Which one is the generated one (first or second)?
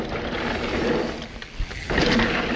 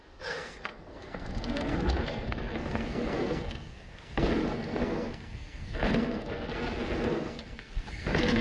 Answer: second